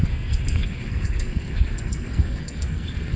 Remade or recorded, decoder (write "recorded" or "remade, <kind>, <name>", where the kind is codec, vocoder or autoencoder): remade, codec, SNAC